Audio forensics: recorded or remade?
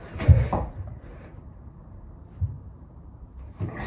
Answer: remade